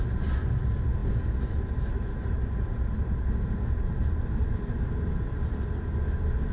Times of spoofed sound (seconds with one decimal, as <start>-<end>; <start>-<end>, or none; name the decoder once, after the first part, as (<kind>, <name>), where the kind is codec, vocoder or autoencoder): none